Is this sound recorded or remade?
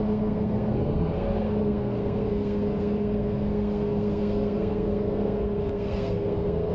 remade